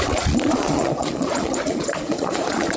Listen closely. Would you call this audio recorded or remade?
remade